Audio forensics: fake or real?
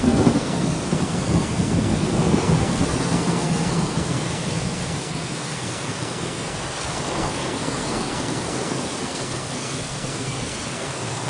fake